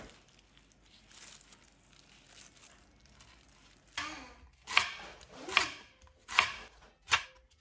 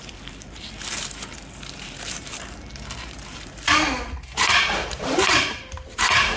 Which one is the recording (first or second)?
first